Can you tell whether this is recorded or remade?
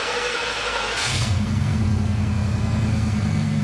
remade